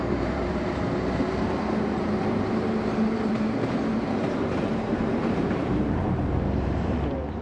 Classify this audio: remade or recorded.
remade